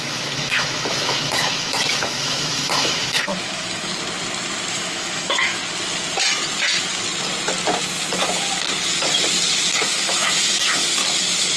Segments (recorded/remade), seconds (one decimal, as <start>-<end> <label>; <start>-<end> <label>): 0.0-3.9 remade; 3.9-4.7 recorded; 4.7-5.6 remade; 5.6-9.9 recorded; 9.9-11.0 remade; 11.0-11.6 recorded